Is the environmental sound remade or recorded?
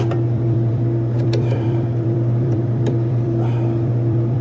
remade